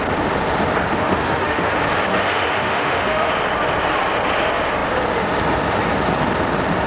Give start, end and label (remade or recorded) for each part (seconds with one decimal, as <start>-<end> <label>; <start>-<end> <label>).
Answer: 0.0-0.9 recorded; 0.9-1.7 remade; 1.7-2.1 recorded; 2.1-3.3 remade; 3.3-6.9 recorded